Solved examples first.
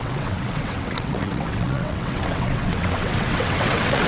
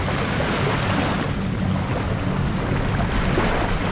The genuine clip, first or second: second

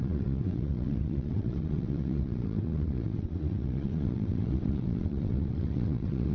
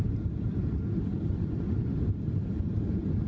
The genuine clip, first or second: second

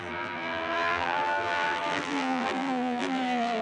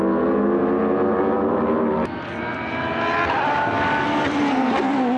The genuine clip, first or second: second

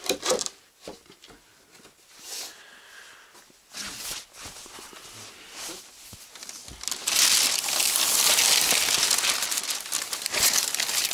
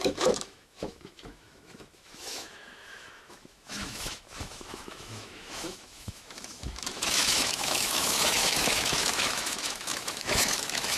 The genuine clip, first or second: first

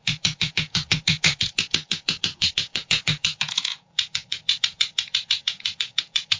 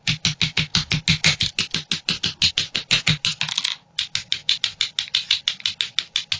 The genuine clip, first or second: second